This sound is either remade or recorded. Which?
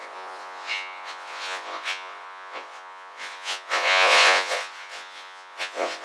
remade